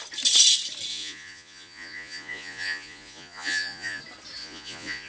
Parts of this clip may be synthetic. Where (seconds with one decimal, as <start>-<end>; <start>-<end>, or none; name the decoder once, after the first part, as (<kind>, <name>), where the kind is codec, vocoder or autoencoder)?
0.9-4.0 (vocoder, Vocos); 4.4-5.1